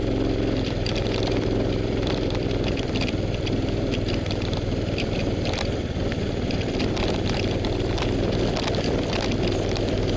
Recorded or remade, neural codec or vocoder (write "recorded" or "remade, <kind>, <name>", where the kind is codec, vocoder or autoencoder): remade, vocoder, BigVGAN v2